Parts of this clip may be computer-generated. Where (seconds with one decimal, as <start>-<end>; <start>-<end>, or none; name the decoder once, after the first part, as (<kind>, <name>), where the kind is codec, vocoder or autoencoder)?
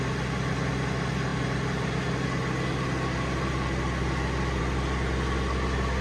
none